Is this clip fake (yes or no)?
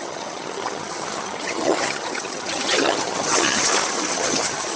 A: yes